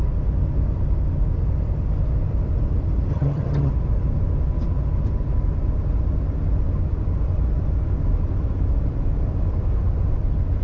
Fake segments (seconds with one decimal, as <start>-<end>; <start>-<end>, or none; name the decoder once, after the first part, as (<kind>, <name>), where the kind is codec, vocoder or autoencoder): 3.1-3.7 (vocoder, HiFi-GAN)